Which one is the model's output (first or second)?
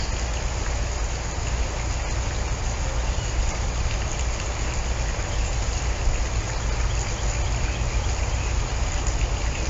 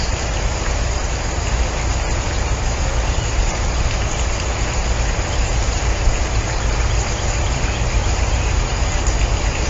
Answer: second